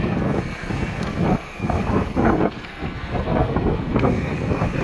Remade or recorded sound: remade